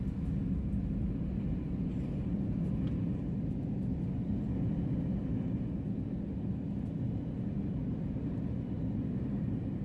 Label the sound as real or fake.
real